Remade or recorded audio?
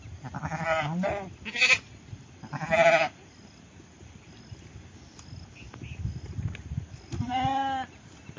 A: recorded